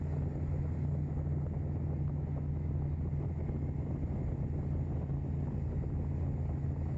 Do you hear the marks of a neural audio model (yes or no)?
no